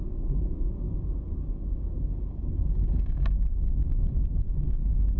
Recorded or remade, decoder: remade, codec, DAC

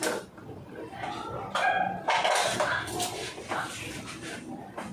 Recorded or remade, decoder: recorded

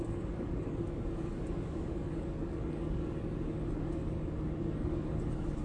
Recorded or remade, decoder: remade, codec, DAC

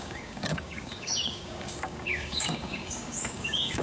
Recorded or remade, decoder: remade, codec, DAC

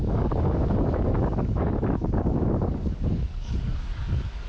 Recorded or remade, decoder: remade, codec, DAC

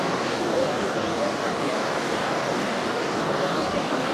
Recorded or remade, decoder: remade, codec, DAC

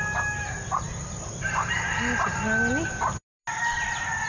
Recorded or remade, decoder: recorded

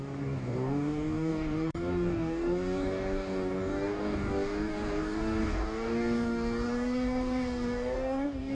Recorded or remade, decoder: remade, codec, DAC